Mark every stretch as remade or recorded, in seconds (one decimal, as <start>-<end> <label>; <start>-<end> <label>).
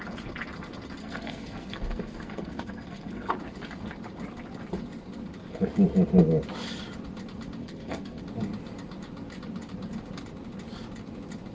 0.0-1.0 recorded; 1.0-3.3 remade; 3.3-7.6 recorded; 7.6-8.2 remade; 8.2-11.5 recorded